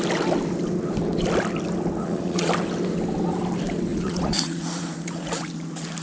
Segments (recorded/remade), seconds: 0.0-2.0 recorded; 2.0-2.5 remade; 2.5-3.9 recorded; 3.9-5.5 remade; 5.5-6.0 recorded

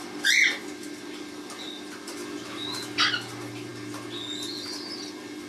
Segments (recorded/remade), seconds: 0.0-2.2 remade; 2.2-3.0 recorded; 3.0-3.7 remade; 3.7-4.5 recorded; 4.5-5.5 remade

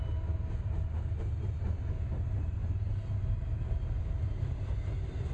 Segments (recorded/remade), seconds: 0.0-5.3 recorded